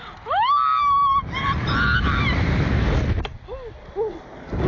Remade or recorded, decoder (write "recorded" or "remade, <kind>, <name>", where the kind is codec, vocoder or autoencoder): recorded